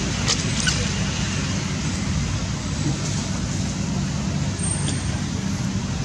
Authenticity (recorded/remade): recorded